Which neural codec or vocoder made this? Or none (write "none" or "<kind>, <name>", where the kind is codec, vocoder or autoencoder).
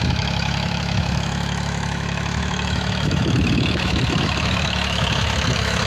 autoencoder, DAC-VAE